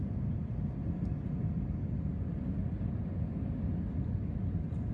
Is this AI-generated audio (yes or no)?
no